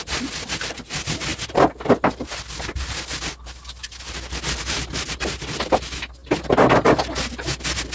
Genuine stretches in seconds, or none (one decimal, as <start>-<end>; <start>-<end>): 0.0-7.9